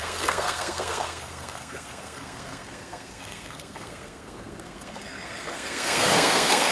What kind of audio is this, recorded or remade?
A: remade